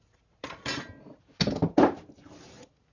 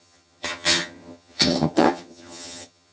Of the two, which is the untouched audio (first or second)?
first